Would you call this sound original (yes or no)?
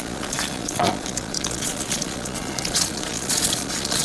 no